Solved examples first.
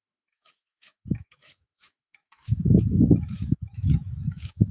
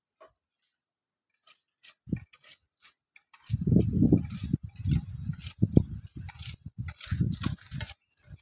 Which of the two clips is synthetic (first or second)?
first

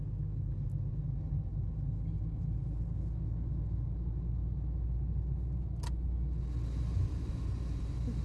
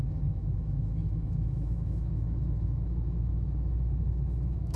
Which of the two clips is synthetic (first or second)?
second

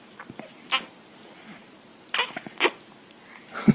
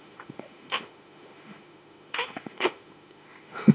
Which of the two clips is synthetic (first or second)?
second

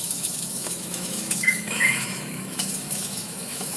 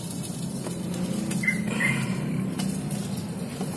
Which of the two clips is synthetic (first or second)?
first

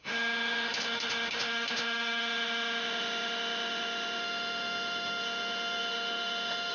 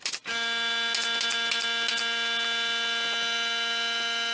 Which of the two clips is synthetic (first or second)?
first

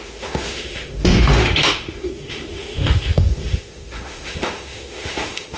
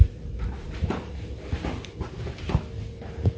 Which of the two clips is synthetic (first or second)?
first